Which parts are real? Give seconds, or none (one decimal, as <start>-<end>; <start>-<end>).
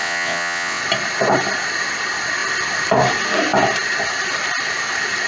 0.8-5.3